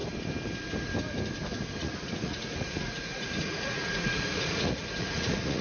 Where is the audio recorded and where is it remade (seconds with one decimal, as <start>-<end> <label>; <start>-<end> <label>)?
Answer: 0.0-1.8 recorded; 1.8-5.6 remade